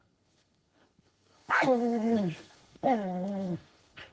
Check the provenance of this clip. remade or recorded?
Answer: remade